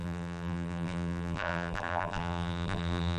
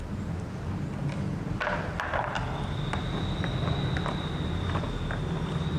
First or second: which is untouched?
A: second